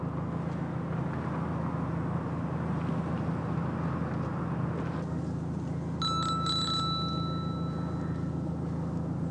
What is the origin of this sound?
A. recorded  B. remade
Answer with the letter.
A